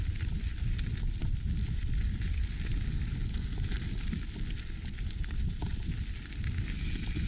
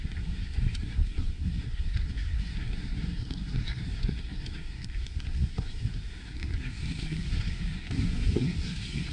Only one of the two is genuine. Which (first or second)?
first